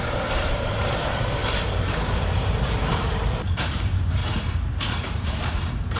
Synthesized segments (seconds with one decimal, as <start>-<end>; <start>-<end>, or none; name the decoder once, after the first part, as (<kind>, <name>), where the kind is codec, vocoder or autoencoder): 0.0-4.2 (vocoder, BigVGAN v2); 4.9-6.0